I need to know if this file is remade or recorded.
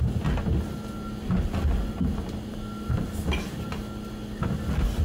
recorded